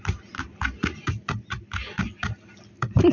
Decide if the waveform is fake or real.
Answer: real